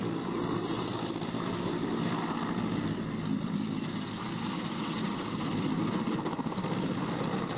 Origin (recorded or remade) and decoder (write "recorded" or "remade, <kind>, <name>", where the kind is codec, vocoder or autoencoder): recorded